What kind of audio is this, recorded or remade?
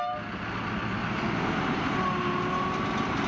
recorded